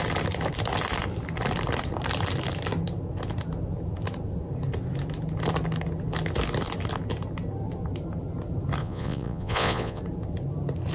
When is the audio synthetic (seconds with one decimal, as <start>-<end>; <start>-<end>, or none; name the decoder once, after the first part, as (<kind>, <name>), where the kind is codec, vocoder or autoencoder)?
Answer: 8.8-10.0 (vocoder, Vocos)